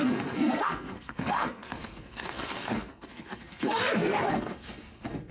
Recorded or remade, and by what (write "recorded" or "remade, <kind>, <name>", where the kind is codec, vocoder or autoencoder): remade, codec, SNAC